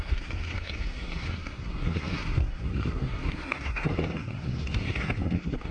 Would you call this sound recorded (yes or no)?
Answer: no